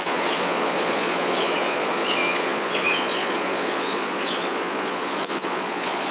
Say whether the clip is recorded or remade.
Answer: remade